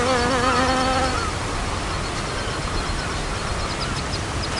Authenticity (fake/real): real